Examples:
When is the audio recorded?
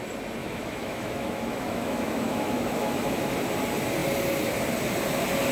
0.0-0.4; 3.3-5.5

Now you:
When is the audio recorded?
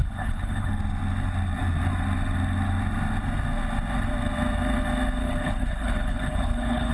0.7-5.2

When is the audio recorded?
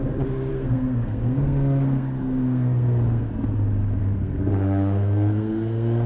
0.0-0.5; 3.3-4.0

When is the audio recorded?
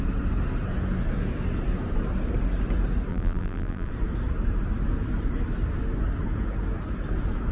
0.0-3.1; 3.9-7.5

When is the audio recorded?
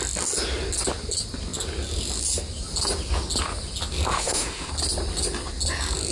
0.0-4.1; 4.7-6.1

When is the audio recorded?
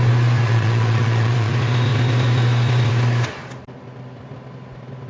0.0-0.4; 1.5-5.1